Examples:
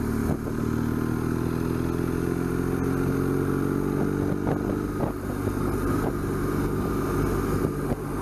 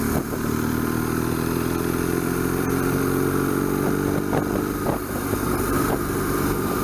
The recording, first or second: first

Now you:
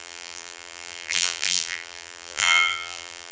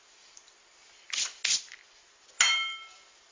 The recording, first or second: second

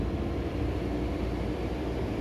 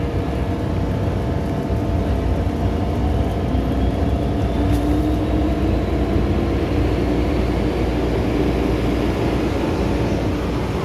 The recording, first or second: second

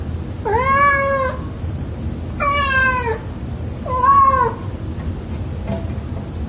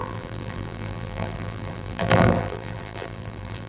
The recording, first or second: first